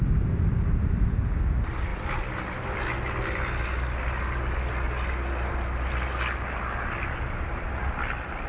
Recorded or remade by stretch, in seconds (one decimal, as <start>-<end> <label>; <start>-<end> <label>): 0.0-8.5 recorded